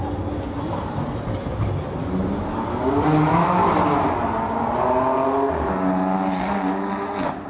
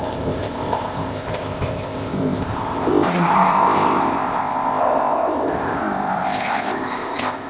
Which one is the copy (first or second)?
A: second